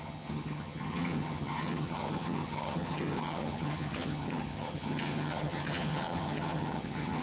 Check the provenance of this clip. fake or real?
fake